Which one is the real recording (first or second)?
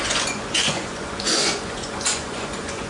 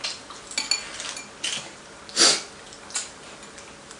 second